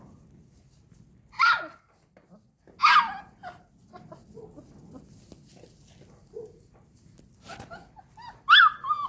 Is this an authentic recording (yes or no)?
yes